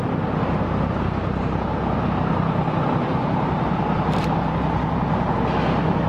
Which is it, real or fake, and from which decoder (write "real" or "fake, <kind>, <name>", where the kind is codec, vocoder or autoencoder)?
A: real